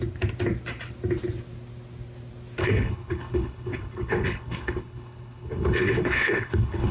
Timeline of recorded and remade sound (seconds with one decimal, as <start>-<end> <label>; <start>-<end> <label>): 0.0-2.6 recorded; 2.6-6.9 remade